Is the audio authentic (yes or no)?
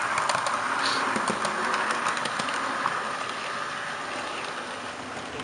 yes